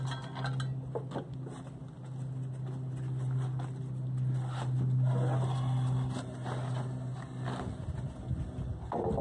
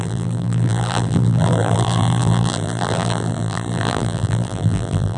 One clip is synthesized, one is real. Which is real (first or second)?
first